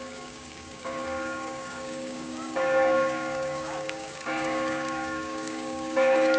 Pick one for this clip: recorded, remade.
remade